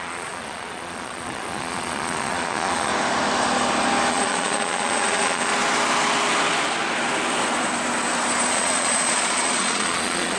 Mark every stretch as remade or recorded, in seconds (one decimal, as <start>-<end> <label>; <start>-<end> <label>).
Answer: 0.0-2.9 remade; 2.9-4.1 recorded; 4.1-5.5 remade; 5.5-8.5 recorded; 8.5-10.4 remade